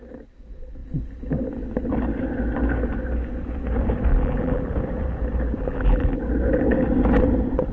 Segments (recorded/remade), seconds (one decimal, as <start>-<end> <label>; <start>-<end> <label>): 0.0-4.1 recorded; 4.1-4.7 remade; 4.7-5.6 recorded; 5.6-6.2 remade; 6.2-7.7 recorded